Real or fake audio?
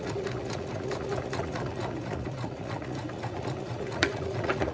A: fake